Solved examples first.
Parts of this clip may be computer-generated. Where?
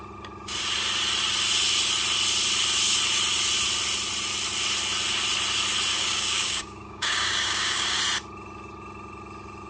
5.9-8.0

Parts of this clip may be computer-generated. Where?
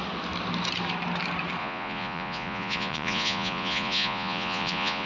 1.6-5.1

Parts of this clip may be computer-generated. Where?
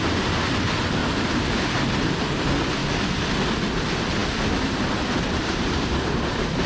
1.0-2.2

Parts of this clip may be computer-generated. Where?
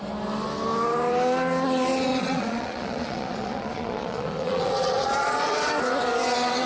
2.1-5.7